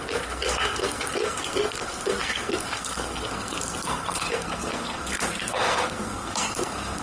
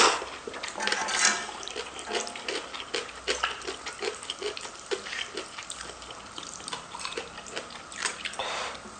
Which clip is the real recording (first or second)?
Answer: second